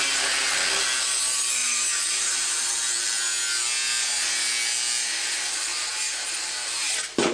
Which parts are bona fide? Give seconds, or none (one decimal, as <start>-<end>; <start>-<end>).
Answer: 0.0-1.6; 2.7-5.7; 6.5-7.3